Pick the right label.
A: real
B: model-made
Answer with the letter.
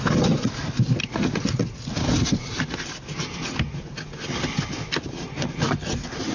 A